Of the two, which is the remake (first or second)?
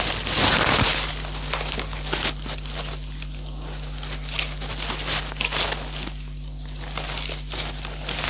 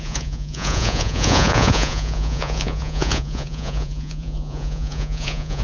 second